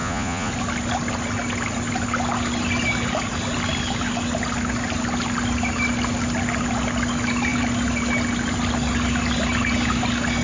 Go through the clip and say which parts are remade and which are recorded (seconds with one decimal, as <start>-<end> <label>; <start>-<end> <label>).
0.0-0.5 remade; 0.5-10.4 recorded